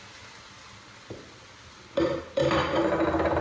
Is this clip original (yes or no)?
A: yes